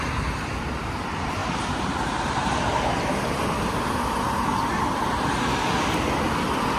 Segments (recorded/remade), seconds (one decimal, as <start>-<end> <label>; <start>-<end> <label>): 0.0-1.4 recorded; 1.4-5.3 remade; 5.3-6.8 recorded